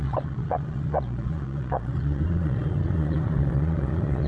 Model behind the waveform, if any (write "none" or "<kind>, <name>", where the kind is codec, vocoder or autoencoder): vocoder, Vocos